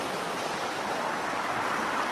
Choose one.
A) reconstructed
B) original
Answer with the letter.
B